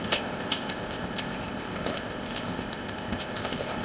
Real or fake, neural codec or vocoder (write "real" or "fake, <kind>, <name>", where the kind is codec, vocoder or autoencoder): fake, codec, ZipCodec